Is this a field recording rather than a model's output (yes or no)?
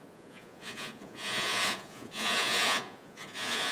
no